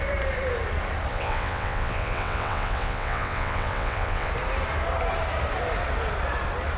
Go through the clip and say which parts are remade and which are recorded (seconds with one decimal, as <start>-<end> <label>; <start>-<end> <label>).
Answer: 0.0-1.1 recorded; 1.1-4.3 remade; 4.3-6.8 recorded